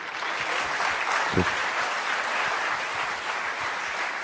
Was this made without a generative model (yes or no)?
yes